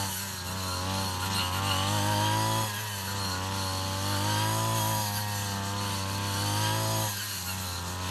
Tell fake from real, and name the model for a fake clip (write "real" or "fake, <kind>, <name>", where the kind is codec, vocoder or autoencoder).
real